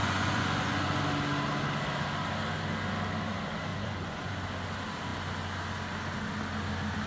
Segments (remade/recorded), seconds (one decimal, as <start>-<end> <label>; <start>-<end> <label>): 0.0-1.0 remade; 1.0-3.7 recorded; 3.7-4.3 remade; 4.3-7.1 recorded